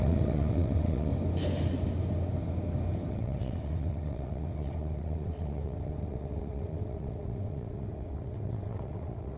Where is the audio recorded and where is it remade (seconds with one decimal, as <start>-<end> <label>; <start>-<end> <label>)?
0.0-1.1 remade; 1.1-3.1 recorded; 3.1-9.4 remade